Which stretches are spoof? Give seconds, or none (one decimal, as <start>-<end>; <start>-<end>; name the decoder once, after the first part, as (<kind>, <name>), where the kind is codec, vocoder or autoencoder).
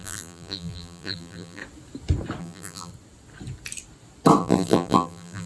0.0-1.6 (vocoder, BigVGAN v2); 2.4-2.9; 4.4-5.5